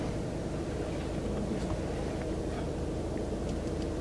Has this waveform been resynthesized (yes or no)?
no